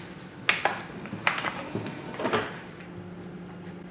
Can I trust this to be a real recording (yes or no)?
yes